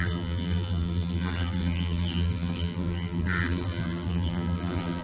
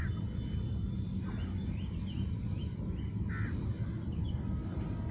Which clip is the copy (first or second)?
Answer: first